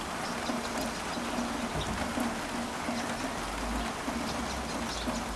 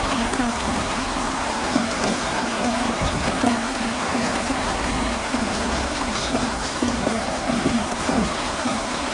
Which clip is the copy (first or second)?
second